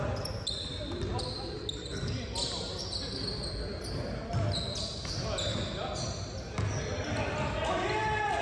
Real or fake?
real